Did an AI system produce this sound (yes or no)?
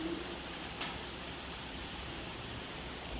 yes